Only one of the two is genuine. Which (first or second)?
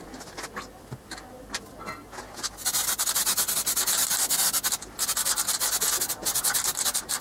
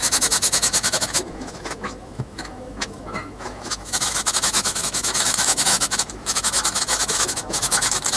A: first